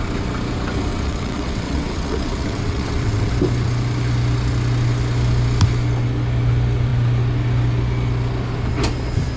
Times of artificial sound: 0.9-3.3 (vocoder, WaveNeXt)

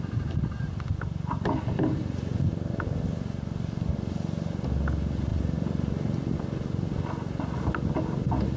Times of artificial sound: none

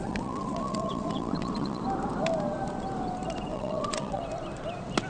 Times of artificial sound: 0.0-1.8 (vocoder, WaveNeXt); 3.5-4.2

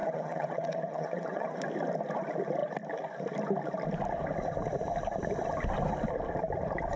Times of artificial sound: 0.0-1.6 (vocoder, WaveNeXt)